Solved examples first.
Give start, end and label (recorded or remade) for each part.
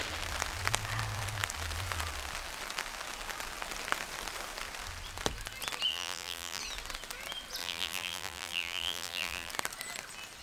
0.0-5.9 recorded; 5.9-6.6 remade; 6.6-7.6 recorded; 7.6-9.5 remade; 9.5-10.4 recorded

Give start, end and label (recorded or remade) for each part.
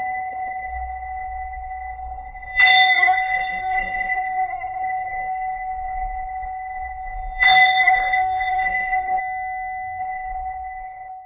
0.0-9.2 remade; 9.2-10.0 recorded; 10.0-11.3 remade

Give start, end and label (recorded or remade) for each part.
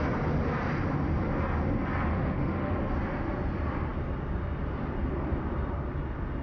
0.0-2.1 recorded; 2.1-2.7 remade; 2.7-6.4 recorded